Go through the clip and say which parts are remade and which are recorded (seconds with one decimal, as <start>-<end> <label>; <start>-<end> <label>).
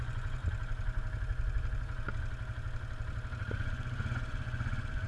0.0-0.4 remade; 0.4-3.5 recorded; 3.5-5.1 remade